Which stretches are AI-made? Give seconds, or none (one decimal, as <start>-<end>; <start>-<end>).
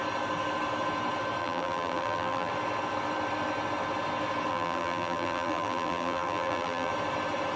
1.4-2.5; 4.5-6.9